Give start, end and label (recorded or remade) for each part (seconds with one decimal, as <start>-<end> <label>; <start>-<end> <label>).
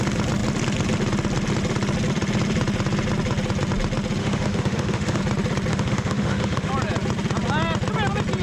0.0-4.2 recorded; 4.2-5.2 remade; 5.2-5.7 recorded; 5.7-6.7 remade; 6.7-8.4 recorded